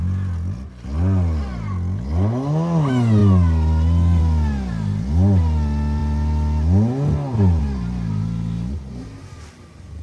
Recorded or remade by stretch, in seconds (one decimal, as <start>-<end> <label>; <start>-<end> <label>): 0.0-10.0 recorded